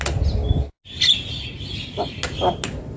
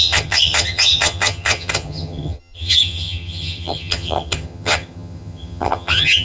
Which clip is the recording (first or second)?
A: first